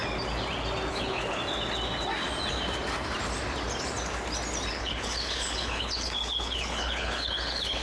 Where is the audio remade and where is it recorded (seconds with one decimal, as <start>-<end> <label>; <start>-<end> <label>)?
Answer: 0.0-0.9 recorded; 0.9-1.4 remade; 1.4-4.7 recorded; 4.7-7.8 remade